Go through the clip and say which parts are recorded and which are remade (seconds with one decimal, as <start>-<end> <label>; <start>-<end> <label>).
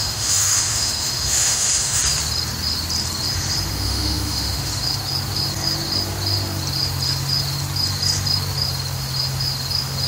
0.0-2.0 remade; 2.0-3.7 recorded; 3.7-4.7 remade; 4.7-10.1 recorded